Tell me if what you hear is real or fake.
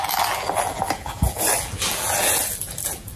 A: fake